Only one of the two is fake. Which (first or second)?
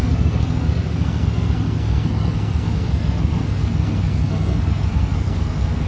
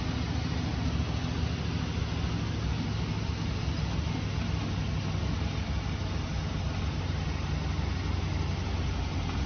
first